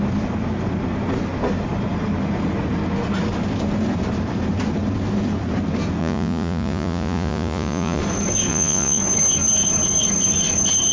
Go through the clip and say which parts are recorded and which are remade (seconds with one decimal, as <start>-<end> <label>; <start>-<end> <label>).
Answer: 0.0-6.0 recorded; 6.0-8.0 remade; 8.0-8.5 recorded; 8.5-9.0 remade; 9.0-10.9 recorded